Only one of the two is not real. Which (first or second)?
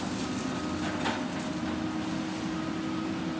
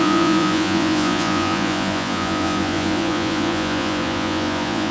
second